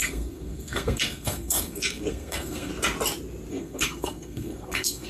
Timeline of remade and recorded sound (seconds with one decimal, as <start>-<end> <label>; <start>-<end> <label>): 0.0-2.7 remade; 2.7-3.5 recorded; 3.5-5.1 remade